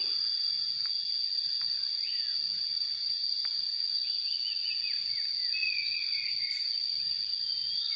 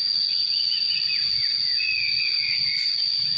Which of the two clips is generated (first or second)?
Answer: second